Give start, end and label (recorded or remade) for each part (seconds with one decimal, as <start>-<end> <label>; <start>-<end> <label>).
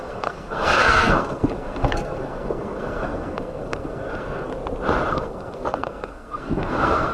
0.0-4.5 remade; 4.5-5.1 recorded; 5.1-7.1 remade